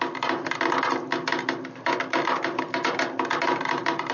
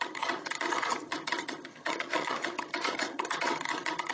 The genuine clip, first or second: first